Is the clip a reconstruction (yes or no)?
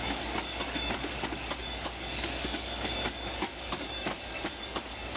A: yes